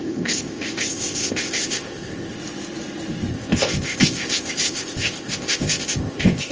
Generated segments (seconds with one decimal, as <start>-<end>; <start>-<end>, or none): 0.0-2.3; 3.3-6.5